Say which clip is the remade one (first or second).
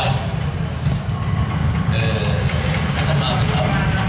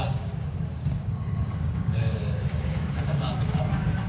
second